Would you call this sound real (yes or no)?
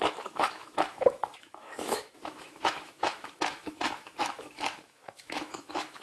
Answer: no